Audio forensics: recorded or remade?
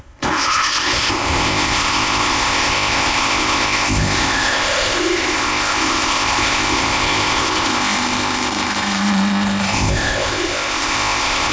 remade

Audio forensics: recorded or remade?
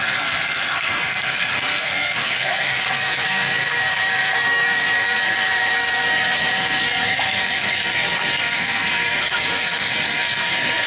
remade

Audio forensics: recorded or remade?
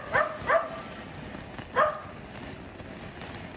recorded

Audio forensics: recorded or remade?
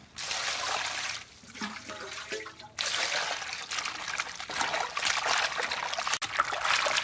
recorded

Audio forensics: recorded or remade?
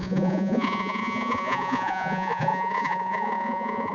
remade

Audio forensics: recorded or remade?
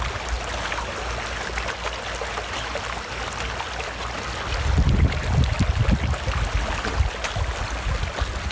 recorded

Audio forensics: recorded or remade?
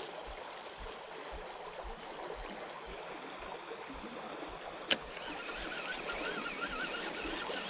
recorded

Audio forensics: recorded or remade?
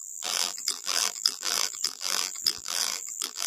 remade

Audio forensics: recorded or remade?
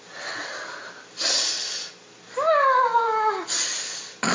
recorded